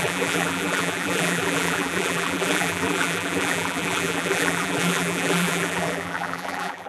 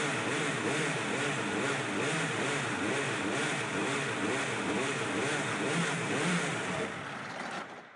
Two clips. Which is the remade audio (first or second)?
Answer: first